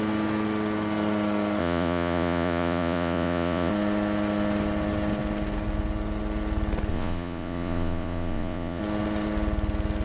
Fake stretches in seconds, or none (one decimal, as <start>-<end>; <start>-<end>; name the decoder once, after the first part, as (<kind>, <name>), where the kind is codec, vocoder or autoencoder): 1.6-3.7 (vocoder, Vocos); 6.9-8.8